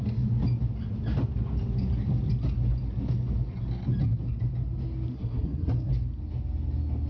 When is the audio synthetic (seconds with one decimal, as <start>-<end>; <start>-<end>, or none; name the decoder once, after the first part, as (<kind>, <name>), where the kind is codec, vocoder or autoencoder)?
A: 5.1-5.9 (codec, SNAC)